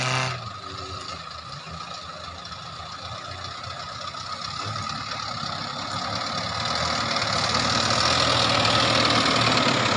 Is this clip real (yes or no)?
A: yes